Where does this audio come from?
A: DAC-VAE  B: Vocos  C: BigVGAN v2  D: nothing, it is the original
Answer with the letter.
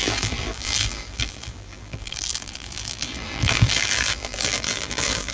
C